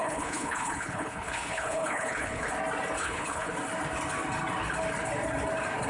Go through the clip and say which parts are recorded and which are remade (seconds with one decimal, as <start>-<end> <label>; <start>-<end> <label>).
0.0-2.5 remade; 2.5-3.0 recorded; 3.0-3.5 remade; 3.5-5.9 recorded